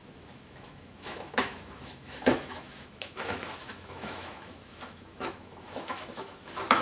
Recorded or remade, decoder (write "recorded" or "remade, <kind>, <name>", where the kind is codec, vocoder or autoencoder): remade, autoencoder, DAC-VAE